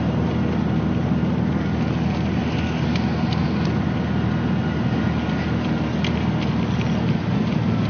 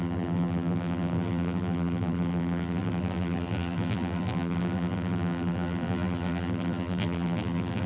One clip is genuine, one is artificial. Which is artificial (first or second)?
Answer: second